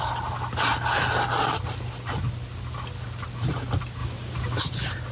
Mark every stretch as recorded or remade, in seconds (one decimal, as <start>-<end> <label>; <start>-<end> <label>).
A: 0.0-5.1 recorded